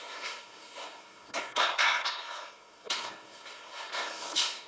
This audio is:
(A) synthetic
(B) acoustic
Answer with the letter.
A